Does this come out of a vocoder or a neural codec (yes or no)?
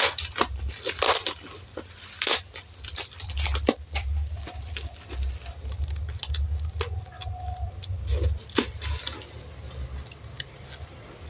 no